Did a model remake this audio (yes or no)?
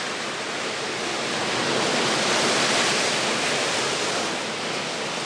no